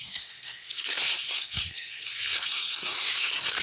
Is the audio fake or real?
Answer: fake